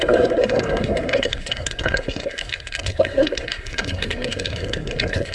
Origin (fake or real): fake